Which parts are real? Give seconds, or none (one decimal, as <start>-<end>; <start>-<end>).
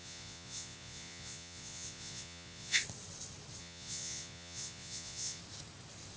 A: 2.8-3.6; 5.4-6.2